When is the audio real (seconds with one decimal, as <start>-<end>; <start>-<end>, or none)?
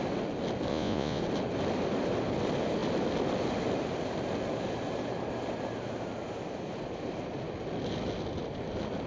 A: 0.0-0.7; 1.2-9.1